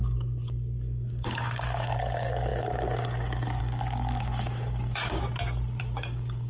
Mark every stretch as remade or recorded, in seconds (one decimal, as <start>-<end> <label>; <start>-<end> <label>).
0.0-5.2 remade; 5.2-5.8 recorded; 5.8-6.5 remade